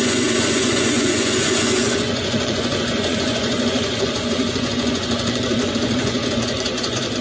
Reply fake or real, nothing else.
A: fake